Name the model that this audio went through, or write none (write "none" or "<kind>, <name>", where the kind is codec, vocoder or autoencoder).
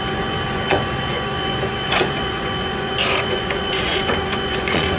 vocoder, Vocos